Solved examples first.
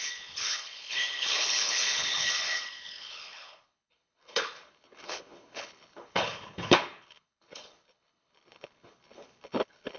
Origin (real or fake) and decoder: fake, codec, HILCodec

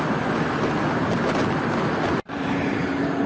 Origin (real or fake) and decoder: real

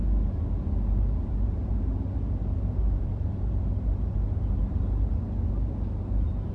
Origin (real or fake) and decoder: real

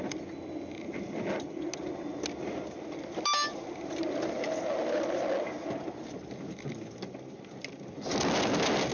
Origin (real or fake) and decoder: real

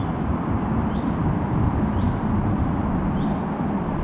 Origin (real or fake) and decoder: real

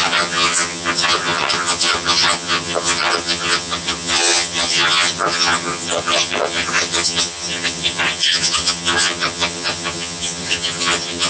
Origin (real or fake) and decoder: fake, vocoder, HiFi-GAN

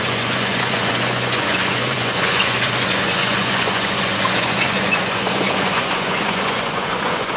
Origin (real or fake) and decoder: fake, vocoder, Vocos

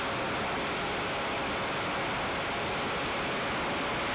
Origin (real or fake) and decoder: real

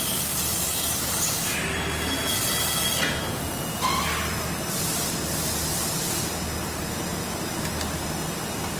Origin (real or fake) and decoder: real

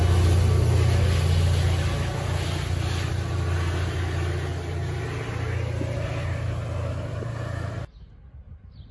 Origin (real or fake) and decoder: real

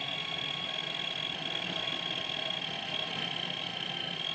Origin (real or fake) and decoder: real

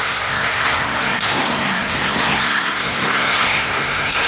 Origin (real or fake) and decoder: fake, codec, SNAC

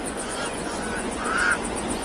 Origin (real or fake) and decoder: fake, vocoder, Vocos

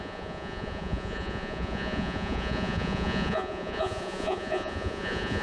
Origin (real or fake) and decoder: fake, vocoder, Vocos